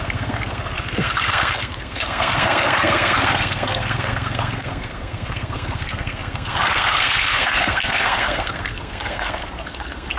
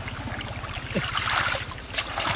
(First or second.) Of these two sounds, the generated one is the first